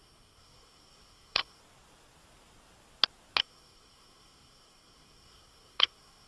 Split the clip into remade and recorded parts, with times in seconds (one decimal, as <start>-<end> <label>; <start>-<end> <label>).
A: 0.0-1.6 remade; 1.6-3.4 recorded; 3.4-6.3 remade